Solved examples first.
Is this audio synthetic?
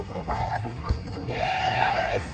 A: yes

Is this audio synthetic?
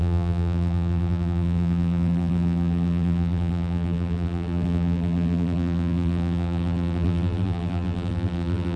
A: yes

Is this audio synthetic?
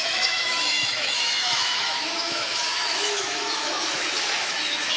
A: yes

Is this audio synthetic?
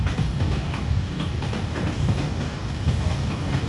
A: yes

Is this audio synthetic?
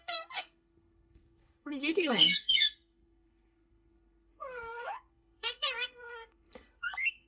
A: yes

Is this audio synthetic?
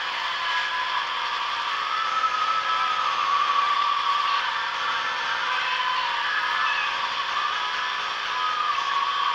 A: no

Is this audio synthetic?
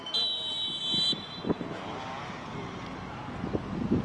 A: no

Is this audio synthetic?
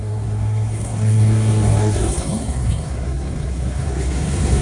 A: yes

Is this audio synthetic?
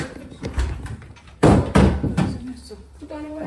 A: yes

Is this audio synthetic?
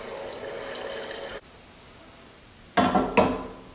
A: no